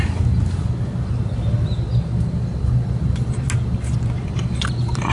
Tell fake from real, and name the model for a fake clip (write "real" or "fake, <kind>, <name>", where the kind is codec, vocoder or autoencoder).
real